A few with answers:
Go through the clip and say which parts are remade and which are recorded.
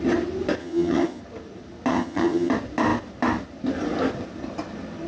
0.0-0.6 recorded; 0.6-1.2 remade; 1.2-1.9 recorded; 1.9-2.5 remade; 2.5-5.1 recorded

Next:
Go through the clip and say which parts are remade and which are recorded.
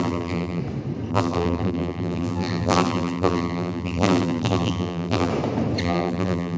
0.0-0.6 remade; 0.6-1.1 recorded; 1.1-5.3 remade; 5.3-5.8 recorded; 5.8-6.6 remade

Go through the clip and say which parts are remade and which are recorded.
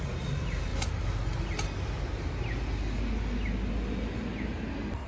0.0-5.1 recorded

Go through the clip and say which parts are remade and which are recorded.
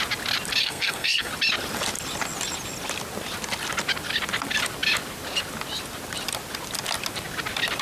0.0-0.6 recorded; 0.6-1.3 remade; 1.3-7.8 recorded